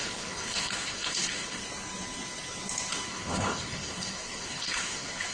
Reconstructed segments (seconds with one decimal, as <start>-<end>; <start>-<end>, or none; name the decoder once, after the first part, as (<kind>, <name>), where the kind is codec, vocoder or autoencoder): 0.0-1.6 (codec, HILCodec); 3.1-5.3